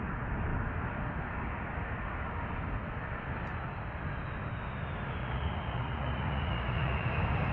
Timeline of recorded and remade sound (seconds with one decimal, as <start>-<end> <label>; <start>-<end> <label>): 0.0-5.2 recorded; 5.2-7.1 remade; 7.1-7.5 recorded